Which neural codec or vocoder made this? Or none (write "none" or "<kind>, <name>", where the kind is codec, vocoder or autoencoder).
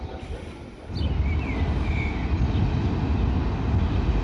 none